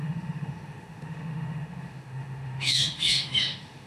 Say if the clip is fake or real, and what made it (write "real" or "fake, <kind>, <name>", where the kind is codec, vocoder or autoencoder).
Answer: fake, autoencoder, DAC-VAE